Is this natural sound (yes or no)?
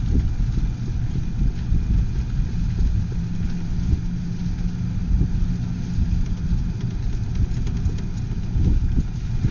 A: yes